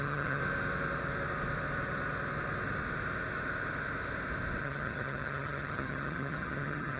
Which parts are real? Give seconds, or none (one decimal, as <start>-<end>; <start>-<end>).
0.4-4.6